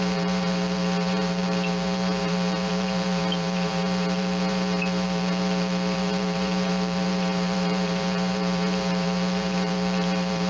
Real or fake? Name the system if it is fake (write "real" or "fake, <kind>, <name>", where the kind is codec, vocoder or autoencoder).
fake, vocoder, BigVGAN v2